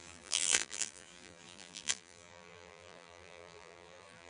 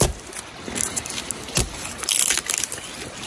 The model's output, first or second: first